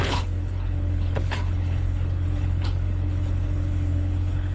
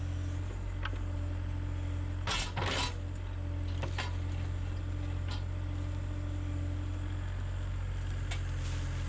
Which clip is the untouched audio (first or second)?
second